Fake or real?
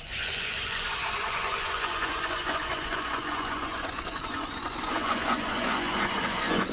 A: fake